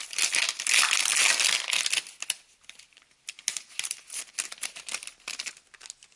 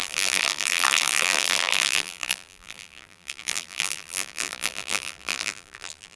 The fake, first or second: second